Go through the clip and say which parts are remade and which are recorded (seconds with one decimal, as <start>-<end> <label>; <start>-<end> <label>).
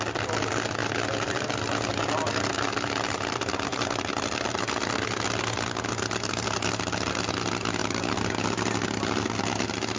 0.0-10.0 recorded